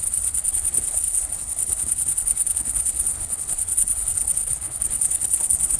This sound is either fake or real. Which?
fake